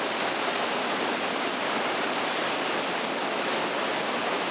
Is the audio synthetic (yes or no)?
yes